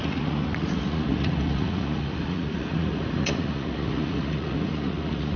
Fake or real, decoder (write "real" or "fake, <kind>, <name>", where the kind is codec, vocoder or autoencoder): fake, vocoder, Vocos